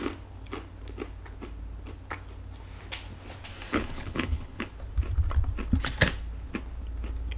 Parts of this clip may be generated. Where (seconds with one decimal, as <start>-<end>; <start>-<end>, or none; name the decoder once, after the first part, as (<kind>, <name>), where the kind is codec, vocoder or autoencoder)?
3.7-4.7 (codec, HILCodec)